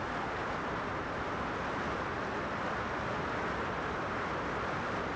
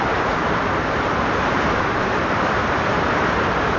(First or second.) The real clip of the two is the first